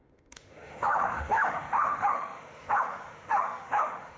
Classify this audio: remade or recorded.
remade